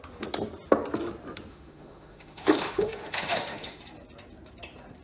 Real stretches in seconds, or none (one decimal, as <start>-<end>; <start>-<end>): 0.0-1.5; 3.8-5.0